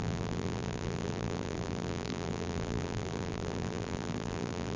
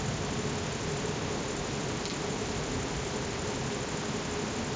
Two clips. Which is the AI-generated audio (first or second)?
first